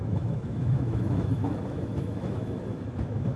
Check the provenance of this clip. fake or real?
fake